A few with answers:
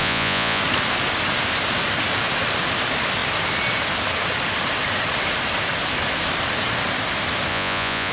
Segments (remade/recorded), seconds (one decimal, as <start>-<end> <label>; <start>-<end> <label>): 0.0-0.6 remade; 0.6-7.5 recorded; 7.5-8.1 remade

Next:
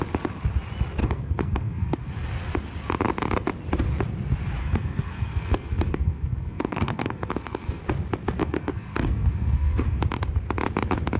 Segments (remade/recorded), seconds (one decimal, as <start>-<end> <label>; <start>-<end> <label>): 0.0-1.0 recorded; 1.0-2.1 remade; 2.1-4.6 recorded; 4.6-7.8 remade; 7.8-8.4 recorded; 8.4-10.0 remade; 10.0-11.2 recorded

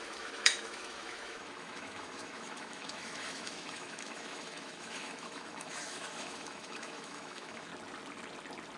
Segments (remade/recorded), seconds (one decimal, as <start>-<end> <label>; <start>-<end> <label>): 0.0-7.7 remade; 7.7-8.8 recorded